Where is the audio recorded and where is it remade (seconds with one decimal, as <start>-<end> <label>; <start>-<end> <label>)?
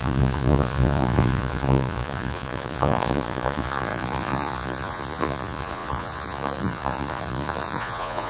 0.0-8.3 remade